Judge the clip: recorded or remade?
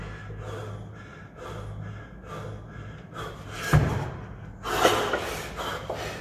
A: recorded